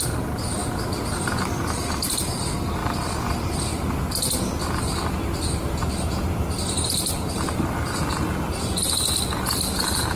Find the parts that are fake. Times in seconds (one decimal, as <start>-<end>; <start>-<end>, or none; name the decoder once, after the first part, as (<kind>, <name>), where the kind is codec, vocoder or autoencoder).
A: 0.6-2.2 (vocoder, BigVGAN v2)